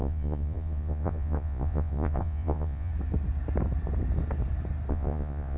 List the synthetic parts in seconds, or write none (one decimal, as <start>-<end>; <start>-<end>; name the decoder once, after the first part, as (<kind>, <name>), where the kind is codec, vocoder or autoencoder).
0.0-2.9 (vocoder, Vocos); 4.9-5.6